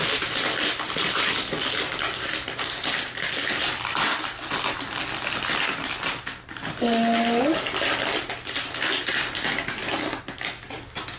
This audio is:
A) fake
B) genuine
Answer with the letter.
B